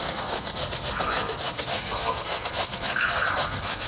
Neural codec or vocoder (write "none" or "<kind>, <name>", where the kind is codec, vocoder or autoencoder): codec, SNAC